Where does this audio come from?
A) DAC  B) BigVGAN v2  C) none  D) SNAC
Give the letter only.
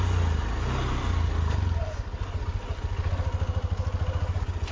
C